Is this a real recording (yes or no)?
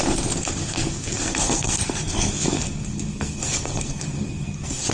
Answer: no